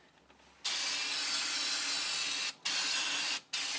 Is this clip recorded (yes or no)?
yes